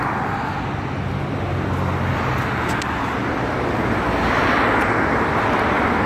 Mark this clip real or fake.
real